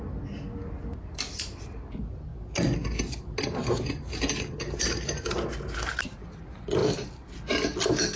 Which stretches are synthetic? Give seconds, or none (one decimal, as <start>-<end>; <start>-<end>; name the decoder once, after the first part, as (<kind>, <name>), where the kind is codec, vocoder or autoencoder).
6.8-7.4 (vocoder, BigVGAN v2)